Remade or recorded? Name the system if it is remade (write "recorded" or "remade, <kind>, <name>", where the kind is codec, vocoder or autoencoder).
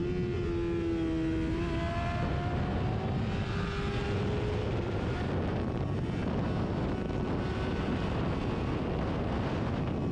recorded